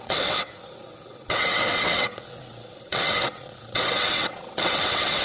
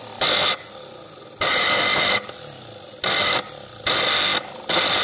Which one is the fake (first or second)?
first